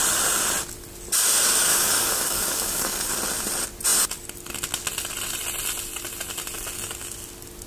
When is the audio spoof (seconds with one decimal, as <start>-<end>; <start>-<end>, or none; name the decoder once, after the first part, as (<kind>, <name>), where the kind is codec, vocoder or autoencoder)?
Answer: 1.7-3.1 (codec, DAC)